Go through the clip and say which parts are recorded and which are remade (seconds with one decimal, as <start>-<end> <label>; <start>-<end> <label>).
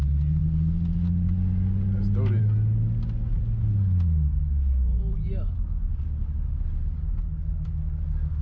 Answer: 0.0-8.4 recorded